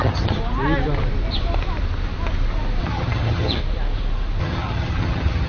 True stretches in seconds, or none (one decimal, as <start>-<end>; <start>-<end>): 0.4-2.8; 3.6-4.4